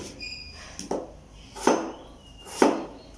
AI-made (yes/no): no